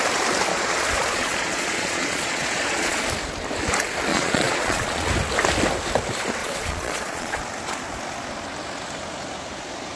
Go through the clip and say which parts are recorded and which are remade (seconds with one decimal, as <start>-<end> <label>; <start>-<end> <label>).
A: 0.0-0.5 recorded; 0.5-3.0 remade; 3.0-4.1 recorded; 4.1-5.1 remade; 5.1-6.4 recorded; 6.4-7.4 remade; 7.4-10.0 recorded